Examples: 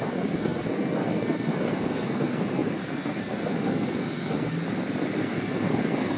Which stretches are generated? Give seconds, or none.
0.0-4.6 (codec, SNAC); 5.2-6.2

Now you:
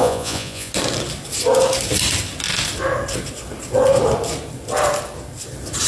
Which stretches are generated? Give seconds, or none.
0.0-0.7 (vocoder, Vocos)

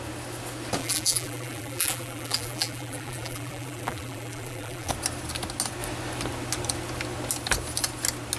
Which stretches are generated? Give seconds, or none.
0.8-4.9 (vocoder, BigVGAN v2)

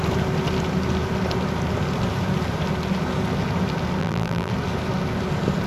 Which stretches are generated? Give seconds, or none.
4.0-4.5 (vocoder, BigVGAN v2)

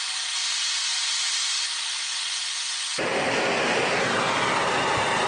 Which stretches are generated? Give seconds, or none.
none

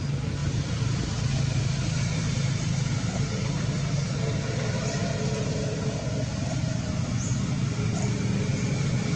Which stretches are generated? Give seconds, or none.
none